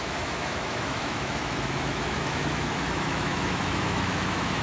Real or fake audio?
fake